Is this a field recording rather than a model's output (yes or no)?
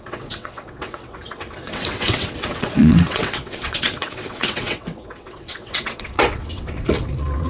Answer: no